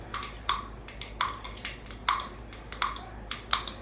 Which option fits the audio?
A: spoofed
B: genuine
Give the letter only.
B